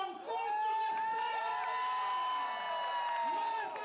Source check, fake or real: real